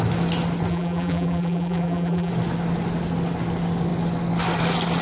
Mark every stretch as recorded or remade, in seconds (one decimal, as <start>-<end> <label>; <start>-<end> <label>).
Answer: 0.0-0.7 recorded; 0.7-2.3 remade; 2.3-5.0 recorded